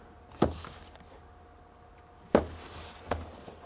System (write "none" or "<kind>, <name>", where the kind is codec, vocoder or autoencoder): none